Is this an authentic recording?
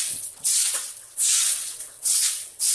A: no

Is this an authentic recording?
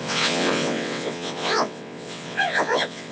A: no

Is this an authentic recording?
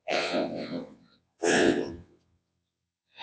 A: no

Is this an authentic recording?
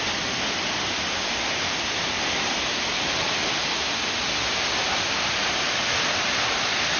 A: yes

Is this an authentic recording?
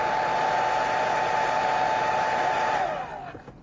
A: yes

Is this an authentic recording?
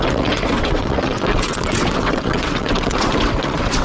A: no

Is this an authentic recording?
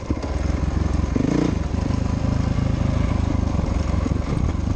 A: yes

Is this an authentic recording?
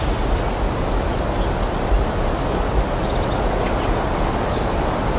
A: yes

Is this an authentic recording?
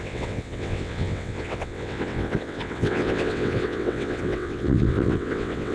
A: no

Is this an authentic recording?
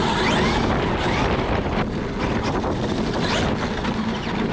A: yes